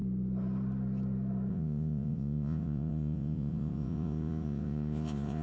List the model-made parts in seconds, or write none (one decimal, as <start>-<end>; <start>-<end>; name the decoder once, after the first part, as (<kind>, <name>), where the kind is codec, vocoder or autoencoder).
1.5-5.4 (vocoder, Vocos)